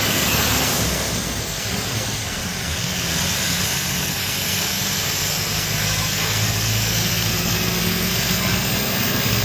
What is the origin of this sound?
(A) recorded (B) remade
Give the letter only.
B